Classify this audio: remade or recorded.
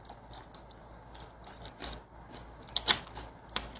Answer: recorded